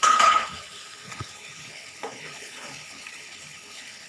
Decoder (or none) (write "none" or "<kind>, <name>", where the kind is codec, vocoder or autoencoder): codec, HILCodec